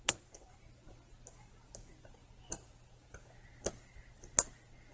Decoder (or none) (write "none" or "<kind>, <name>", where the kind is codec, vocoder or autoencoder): none